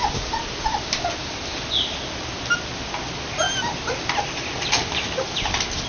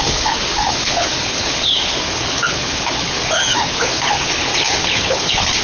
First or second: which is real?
first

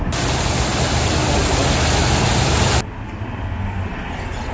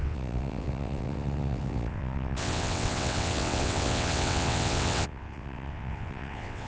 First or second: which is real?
first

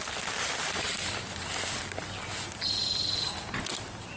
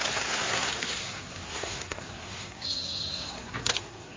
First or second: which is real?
first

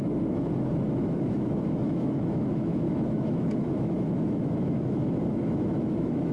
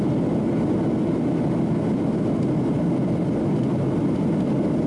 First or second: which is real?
second